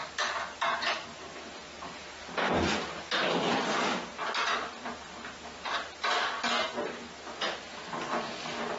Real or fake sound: real